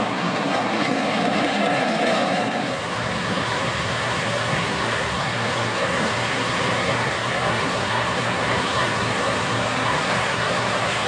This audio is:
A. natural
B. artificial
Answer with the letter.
B